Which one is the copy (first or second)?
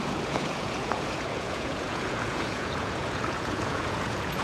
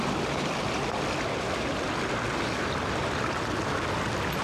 first